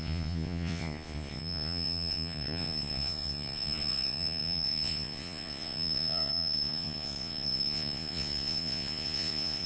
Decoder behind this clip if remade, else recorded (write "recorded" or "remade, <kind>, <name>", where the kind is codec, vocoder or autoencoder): remade, vocoder, Vocos